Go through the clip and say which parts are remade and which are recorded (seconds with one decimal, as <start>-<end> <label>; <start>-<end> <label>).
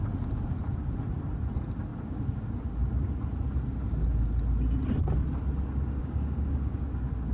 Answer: 0.0-1.9 recorded; 1.9-2.4 remade; 2.4-6.0 recorded; 6.0-7.3 remade